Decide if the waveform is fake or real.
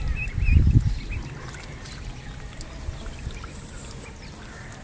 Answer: real